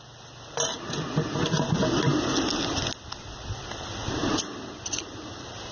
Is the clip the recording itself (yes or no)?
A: yes